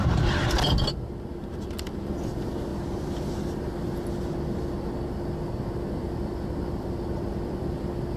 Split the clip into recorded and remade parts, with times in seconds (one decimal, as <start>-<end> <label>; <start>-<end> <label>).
0.0-1.3 recorded; 1.3-2.3 remade; 2.3-8.2 recorded